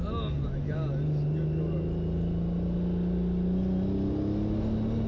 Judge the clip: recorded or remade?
recorded